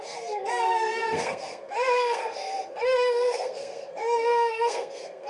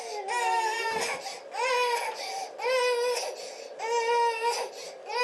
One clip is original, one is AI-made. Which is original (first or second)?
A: second